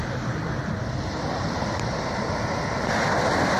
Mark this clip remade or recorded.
remade